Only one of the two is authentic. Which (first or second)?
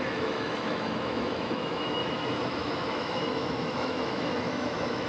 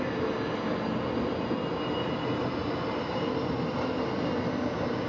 second